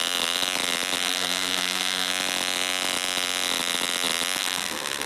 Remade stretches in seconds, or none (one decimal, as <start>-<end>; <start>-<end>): 1.0-2.1; 4.4-5.1